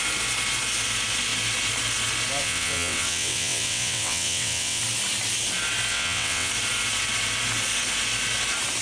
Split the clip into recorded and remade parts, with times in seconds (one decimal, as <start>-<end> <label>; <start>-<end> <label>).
0.0-2.4 recorded; 2.4-4.8 remade; 4.8-5.9 recorded; 5.9-6.5 remade; 6.5-8.8 recorded